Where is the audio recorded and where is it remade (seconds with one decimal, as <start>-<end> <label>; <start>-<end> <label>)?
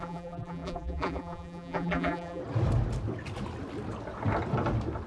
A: 0.0-2.4 remade; 2.4-5.1 recorded